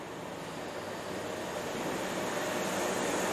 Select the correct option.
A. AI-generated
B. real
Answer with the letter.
B